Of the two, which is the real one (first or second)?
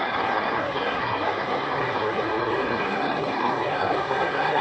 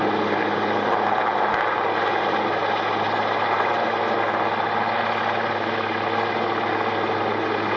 second